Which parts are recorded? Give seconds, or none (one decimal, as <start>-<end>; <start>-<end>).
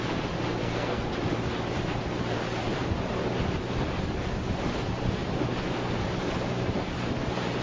0.0-0.6; 1.1-7.6